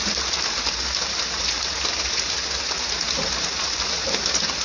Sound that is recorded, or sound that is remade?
recorded